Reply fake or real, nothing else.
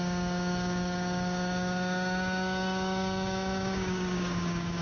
fake